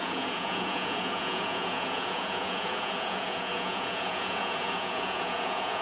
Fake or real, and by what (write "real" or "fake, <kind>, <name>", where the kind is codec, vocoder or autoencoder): fake, vocoder, Vocos